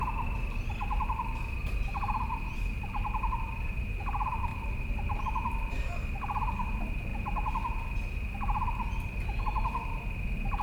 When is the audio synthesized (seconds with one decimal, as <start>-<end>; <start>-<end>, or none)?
4.5-5.2